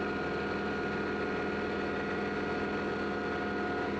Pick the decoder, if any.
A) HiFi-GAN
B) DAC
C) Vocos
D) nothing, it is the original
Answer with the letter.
D